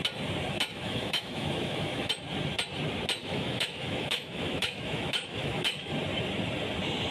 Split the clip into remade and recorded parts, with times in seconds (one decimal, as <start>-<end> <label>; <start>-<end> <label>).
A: 0.0-0.7 recorded; 0.7-2.1 remade; 2.1-3.2 recorded; 3.2-5.9 remade; 5.9-7.1 recorded